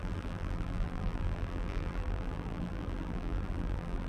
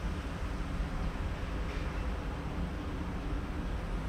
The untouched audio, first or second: second